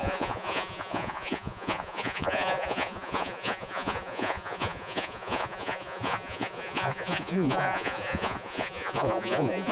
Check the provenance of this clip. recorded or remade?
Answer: remade